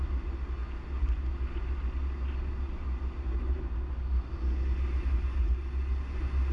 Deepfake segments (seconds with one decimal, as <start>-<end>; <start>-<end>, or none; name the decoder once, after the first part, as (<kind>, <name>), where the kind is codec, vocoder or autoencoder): none